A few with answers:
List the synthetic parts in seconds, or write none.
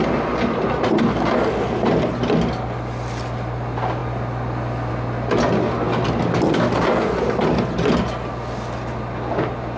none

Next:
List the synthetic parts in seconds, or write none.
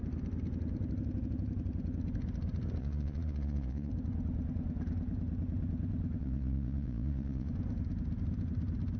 2.8-3.9 (vocoder, Vocos); 6.2-7.5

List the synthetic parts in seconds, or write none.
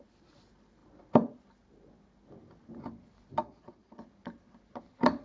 3.4-4.0 (vocoder, Vocos)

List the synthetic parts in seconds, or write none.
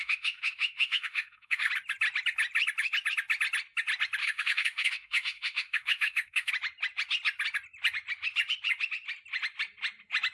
0.0-1.7 (autoencoder, DAC-VAE); 4.2-6.5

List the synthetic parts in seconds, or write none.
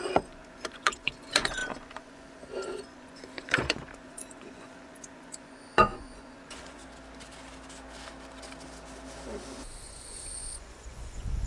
0.0-6.8 (vocoder, Vocos); 9.6-11.5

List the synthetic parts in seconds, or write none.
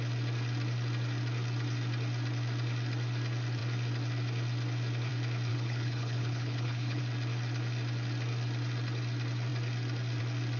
5.5-7.0 (codec, HILCodec)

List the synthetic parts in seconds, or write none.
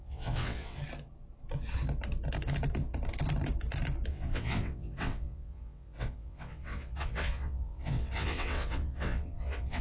0.0-0.8 (vocoder, WaveNeXt); 4.1-9.8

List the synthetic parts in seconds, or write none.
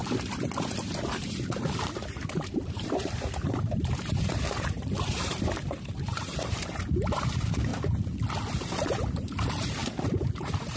0.7-7.7 (vocoder, BigVGAN v2); 8.7-10.8